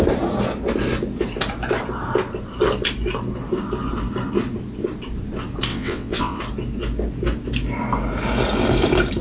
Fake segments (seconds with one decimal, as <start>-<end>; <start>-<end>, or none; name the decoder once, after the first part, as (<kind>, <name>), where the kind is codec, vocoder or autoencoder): 5.7-6.4 (vocoder, WaveNeXt)